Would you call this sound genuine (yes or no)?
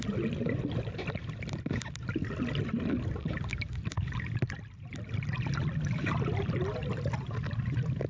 yes